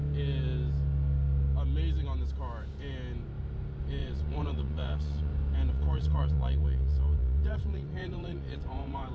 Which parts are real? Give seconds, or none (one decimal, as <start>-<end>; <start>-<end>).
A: 0.0-4.0; 5.3-5.7